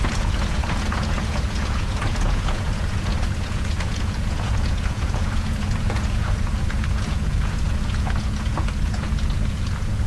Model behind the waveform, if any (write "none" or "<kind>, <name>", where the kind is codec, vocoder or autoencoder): vocoder, Vocos